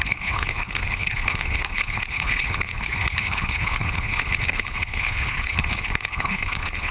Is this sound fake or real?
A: fake